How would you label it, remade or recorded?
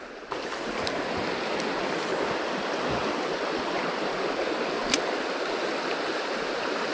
recorded